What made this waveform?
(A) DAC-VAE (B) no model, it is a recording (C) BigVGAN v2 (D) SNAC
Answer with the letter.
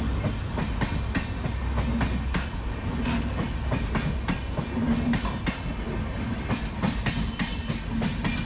B